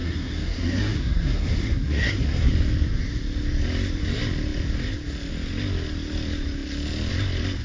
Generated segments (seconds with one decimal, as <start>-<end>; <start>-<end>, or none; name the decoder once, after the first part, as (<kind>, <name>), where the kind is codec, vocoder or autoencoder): 0.0-2.5 (codec, SNAC)